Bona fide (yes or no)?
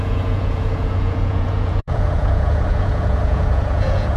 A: no